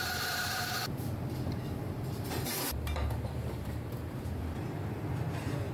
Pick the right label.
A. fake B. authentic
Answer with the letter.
A